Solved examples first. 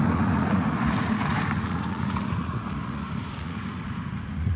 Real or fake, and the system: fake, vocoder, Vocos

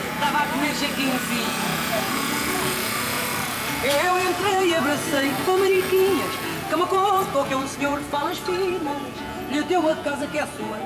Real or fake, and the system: fake, vocoder, Vocos